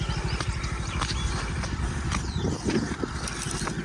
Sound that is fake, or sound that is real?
real